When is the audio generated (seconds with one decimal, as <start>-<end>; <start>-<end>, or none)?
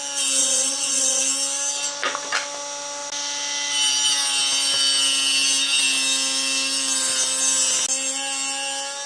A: 0.4-1.2